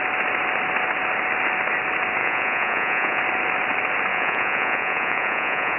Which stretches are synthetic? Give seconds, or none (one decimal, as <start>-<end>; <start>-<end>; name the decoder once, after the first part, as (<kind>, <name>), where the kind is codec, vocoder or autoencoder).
2.2-3.2 (vocoder, Vocos); 4.1-5.8